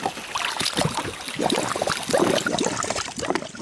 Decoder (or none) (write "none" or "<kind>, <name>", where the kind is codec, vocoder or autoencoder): none